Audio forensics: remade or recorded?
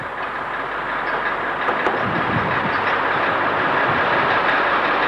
recorded